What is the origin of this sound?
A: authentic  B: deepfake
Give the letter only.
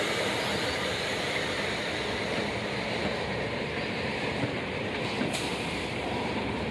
B